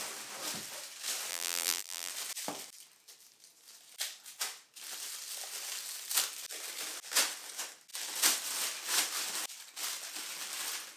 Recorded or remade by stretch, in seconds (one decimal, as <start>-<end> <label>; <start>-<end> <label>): 0.0-1.3 recorded; 1.3-2.1 remade; 2.1-11.0 recorded